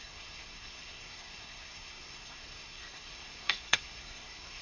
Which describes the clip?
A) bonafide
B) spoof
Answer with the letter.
B